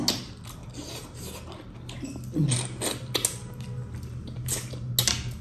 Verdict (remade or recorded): recorded